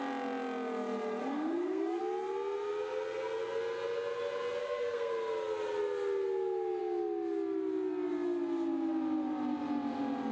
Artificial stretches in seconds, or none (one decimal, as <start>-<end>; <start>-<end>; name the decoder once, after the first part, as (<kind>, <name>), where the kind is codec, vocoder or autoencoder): 1.2-2.0 (codec, SNAC); 4.6-5.1